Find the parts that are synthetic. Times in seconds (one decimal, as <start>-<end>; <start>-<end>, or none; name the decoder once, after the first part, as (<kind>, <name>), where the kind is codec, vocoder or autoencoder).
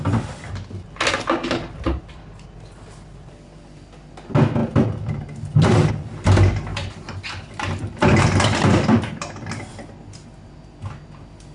4.6-5.9 (vocoder, BigVGAN v2); 6.7-10.0